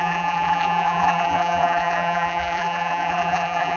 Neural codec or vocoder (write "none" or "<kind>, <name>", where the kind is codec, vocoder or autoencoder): vocoder, BigVGAN v2